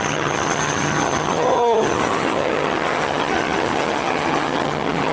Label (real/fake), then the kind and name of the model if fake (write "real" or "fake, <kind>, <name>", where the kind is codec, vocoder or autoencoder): fake, vocoder, HiFi-GAN